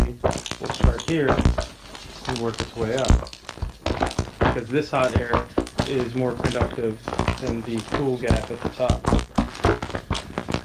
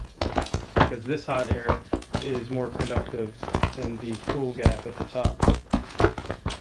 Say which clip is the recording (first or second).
first